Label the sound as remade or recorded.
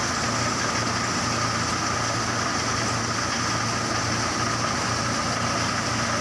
recorded